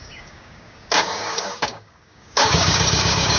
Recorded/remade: remade